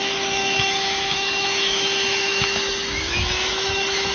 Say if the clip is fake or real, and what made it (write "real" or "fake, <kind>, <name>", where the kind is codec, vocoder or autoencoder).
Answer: fake, autoencoder, DAC-VAE